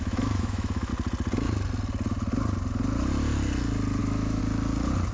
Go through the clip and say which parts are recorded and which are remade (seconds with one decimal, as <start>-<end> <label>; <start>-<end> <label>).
0.0-0.9 remade; 0.9-4.0 recorded; 4.0-4.4 remade; 4.4-5.1 recorded